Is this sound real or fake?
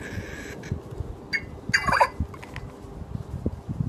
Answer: real